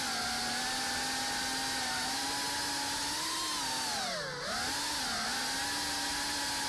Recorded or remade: recorded